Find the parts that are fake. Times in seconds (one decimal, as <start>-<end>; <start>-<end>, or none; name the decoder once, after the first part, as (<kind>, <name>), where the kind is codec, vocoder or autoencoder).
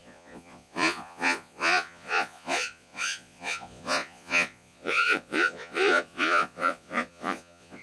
0.0-7.8 (vocoder, Vocos)